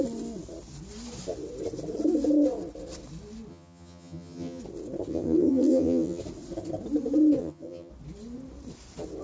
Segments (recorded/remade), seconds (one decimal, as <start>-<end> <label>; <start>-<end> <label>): 0.0-3.5 recorded; 3.5-4.6 remade; 4.6-5.1 recorded; 5.1-6.2 remade; 6.2-7.4 recorded; 7.4-7.9 remade; 7.9-9.2 recorded